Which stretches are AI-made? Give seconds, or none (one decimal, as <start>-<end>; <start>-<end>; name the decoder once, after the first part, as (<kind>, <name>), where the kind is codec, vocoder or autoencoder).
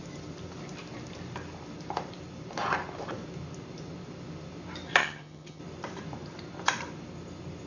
5.0-5.6 (vocoder, HiFi-GAN)